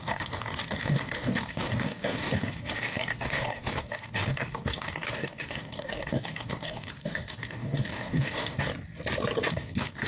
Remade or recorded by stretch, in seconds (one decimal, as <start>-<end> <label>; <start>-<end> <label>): 0.0-8.7 remade; 8.7-9.5 recorded; 9.5-10.1 remade